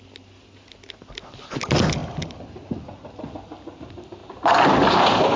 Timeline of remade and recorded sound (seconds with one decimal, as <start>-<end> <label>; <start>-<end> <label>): 0.0-5.4 recorded